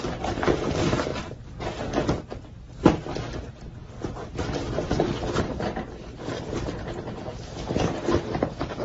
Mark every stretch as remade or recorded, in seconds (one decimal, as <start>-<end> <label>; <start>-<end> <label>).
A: 0.0-1.1 remade; 1.1-5.4 recorded; 5.4-8.8 remade